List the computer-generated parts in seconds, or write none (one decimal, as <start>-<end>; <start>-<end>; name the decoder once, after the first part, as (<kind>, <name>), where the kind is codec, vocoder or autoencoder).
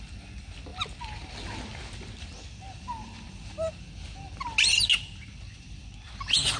none